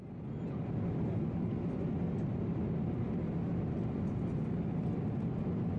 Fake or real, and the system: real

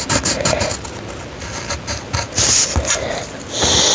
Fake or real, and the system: real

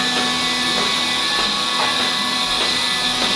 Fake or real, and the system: real